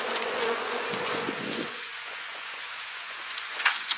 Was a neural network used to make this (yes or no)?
yes